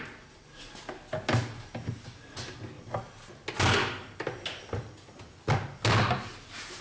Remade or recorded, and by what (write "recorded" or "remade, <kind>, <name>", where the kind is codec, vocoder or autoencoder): recorded